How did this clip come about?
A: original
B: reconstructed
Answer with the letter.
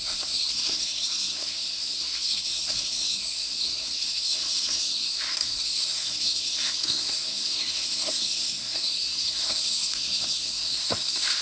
B